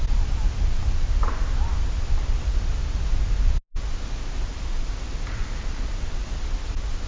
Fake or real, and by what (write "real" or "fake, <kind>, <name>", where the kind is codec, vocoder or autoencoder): real